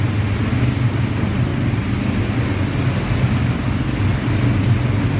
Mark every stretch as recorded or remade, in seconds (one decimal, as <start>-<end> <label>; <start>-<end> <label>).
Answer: 0.0-5.2 recorded